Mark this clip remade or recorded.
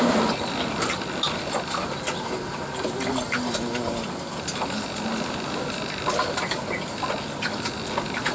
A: recorded